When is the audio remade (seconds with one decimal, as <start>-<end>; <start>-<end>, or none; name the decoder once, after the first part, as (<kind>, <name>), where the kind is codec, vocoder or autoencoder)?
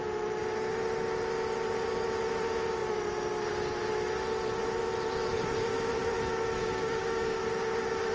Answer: 6.6-7.4 (codec, DAC)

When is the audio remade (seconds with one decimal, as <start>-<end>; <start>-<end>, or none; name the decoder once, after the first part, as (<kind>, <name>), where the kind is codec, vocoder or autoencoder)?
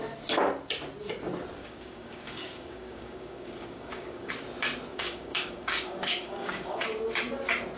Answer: 1.6-4.3 (codec, DAC); 4.9-6.8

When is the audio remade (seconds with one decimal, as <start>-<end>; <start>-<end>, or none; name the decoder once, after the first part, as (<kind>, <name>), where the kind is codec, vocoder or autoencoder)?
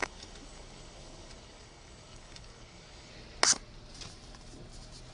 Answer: 0.0-3.1 (codec, DAC)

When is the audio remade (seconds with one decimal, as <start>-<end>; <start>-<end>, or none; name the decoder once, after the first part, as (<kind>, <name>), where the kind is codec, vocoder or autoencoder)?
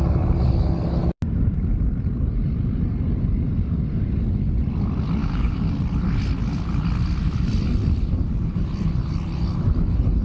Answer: 5.2-5.7 (codec, DAC)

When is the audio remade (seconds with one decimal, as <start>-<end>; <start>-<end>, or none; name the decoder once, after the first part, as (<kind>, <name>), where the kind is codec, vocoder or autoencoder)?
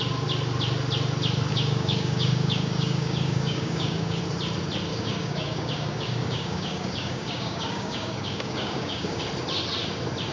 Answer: 1.5-4.2 (codec, DAC); 4.9-9.2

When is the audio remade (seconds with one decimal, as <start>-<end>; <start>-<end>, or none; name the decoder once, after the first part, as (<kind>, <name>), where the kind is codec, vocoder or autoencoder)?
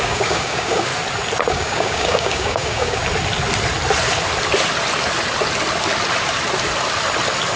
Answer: 0.0-0.9 (codec, DAC); 1.5-3.0